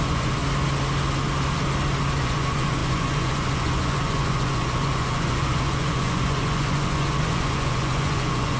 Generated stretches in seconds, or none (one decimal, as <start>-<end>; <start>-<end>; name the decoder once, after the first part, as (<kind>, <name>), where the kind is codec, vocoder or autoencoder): 0.0-0.4 (vocoder, Vocos); 2.2-8.6